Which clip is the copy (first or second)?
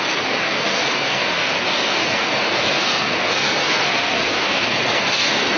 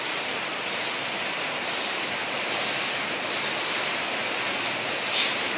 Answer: first